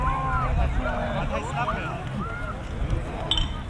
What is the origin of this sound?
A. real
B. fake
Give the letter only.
A